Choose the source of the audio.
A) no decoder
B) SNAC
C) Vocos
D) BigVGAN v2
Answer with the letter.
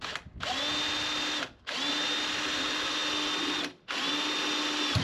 A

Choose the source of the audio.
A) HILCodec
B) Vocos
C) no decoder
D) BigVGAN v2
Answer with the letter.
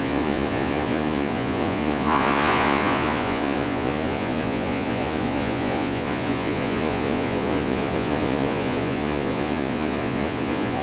B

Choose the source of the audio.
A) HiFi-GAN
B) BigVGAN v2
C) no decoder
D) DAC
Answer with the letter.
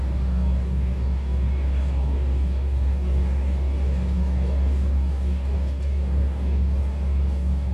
D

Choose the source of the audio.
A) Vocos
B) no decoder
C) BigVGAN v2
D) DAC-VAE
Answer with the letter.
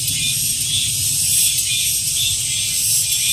B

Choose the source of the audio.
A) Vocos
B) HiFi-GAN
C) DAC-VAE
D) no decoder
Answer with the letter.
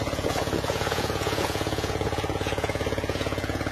A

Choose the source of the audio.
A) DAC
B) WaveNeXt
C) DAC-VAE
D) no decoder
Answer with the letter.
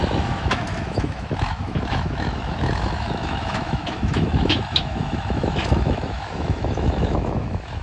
C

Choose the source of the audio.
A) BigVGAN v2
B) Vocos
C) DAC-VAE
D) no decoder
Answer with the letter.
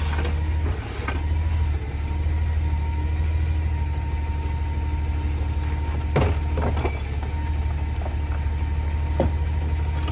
D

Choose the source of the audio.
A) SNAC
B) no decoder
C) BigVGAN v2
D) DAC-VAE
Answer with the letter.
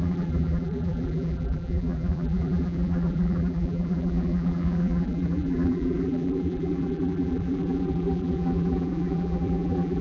C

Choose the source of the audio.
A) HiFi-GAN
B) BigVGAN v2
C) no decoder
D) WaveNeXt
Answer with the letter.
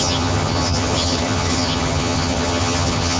A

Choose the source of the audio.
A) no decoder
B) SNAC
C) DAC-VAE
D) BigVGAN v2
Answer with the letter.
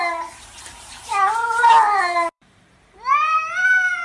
D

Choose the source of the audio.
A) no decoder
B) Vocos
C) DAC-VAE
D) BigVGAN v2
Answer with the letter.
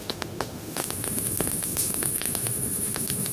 C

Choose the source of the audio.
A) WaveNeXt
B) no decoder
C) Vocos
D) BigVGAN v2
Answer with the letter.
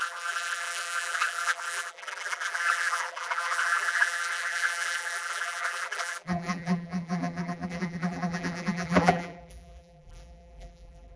D